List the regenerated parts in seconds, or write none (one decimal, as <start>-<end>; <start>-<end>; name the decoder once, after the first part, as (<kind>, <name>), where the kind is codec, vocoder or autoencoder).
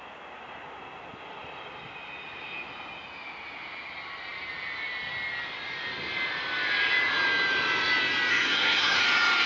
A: 8.3-9.0 (codec, SNAC)